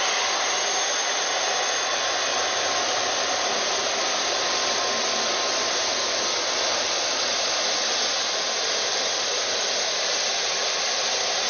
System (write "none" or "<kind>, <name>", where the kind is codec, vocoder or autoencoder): none